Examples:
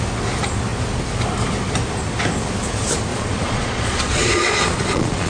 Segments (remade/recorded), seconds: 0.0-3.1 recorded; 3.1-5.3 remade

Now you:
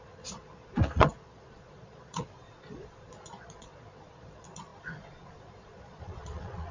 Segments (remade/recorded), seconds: 0.0-6.7 remade